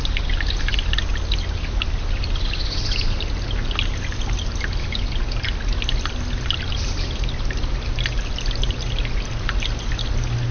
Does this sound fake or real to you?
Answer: real